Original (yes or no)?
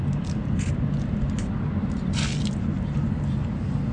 yes